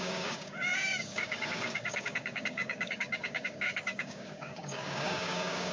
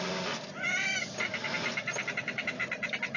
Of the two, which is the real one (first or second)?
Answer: second